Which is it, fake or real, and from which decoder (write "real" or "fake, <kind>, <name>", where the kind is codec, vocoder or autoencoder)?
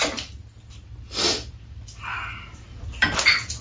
real